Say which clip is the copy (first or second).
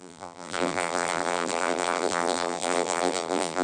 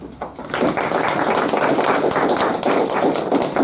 first